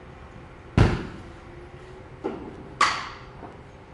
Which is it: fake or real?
real